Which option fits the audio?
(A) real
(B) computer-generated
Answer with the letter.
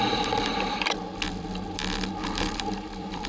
B